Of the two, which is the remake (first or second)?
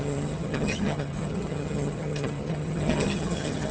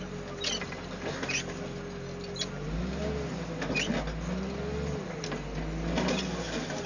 first